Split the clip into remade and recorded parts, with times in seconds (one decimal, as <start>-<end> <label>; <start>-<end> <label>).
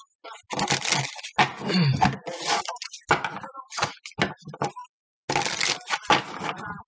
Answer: 0.0-6.9 recorded